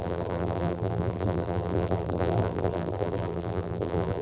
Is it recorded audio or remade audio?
remade